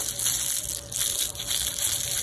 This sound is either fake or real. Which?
real